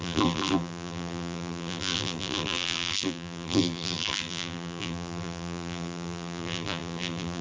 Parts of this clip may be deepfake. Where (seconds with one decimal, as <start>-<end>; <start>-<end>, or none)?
0.0-7.4